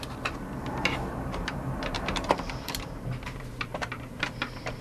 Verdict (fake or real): fake